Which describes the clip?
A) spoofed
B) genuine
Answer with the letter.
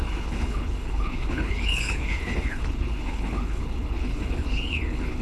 A